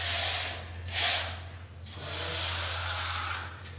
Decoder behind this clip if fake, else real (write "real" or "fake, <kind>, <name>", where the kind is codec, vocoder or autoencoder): real